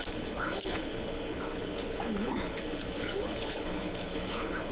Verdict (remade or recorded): remade